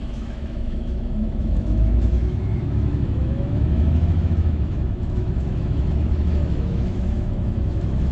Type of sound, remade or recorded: remade